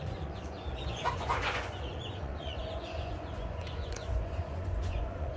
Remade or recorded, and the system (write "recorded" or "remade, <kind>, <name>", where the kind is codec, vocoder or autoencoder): remade, vocoder, Vocos